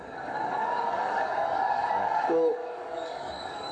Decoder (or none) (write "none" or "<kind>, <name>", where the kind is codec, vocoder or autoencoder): codec, DAC